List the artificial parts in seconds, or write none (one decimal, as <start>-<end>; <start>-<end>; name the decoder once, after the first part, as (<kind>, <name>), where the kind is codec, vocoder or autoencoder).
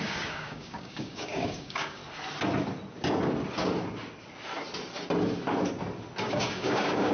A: 0.0-2.0 (codec, DAC); 6.2-7.1